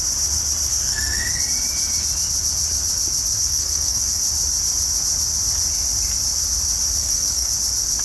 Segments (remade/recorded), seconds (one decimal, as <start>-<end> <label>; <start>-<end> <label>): 0.0-0.7 recorded; 0.7-1.4 remade; 1.4-3.4 recorded; 3.4-4.2 remade; 4.2-7.0 recorded; 7.0-7.5 remade; 7.5-8.0 recorded